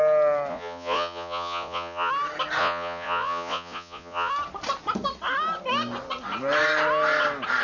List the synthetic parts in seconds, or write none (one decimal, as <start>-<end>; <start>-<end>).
0.5-2.1; 2.6-4.3